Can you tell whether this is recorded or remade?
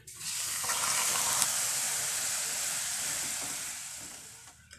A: recorded